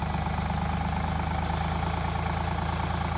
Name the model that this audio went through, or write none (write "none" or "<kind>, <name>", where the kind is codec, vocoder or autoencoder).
none